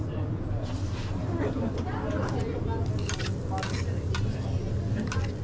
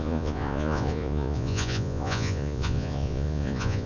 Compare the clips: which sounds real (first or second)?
first